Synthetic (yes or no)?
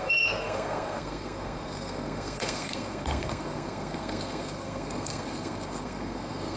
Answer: yes